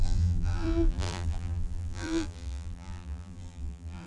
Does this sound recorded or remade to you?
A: remade